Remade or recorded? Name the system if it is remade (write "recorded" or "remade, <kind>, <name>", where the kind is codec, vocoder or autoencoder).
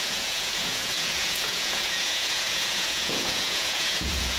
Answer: remade, vocoder, Vocos